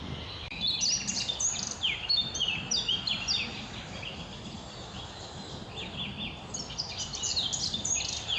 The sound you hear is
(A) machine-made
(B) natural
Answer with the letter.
B